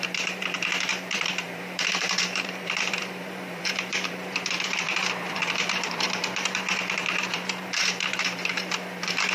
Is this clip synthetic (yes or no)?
yes